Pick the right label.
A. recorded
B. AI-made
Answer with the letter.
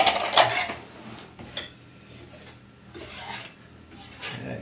A